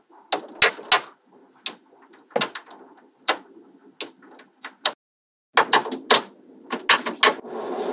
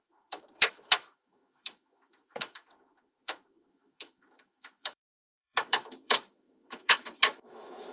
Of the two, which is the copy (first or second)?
second